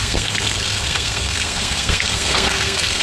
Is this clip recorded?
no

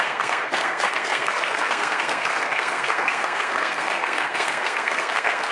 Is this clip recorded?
no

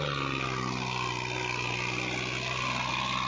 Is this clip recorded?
yes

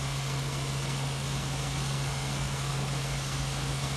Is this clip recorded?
no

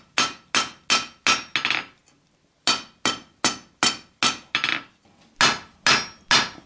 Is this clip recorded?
yes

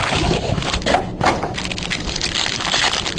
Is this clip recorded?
yes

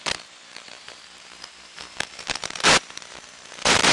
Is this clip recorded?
no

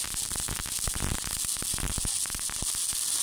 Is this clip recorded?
yes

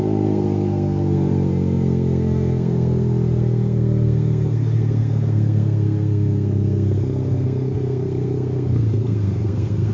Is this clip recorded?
no